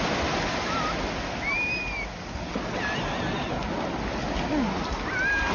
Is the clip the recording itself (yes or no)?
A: yes